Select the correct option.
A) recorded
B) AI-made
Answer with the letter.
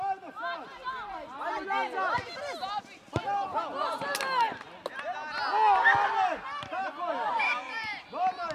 A